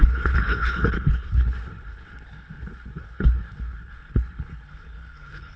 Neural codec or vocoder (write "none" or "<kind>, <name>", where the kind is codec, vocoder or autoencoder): codec, HILCodec